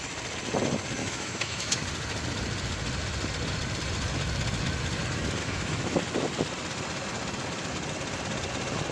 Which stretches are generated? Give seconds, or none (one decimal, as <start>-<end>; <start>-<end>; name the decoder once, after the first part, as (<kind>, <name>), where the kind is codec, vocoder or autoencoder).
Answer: 1.0-1.8 (autoencoder, DAC-VAE); 5.4-6.0